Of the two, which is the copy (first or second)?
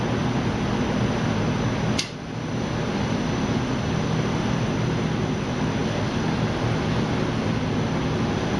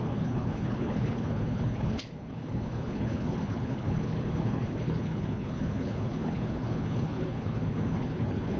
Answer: second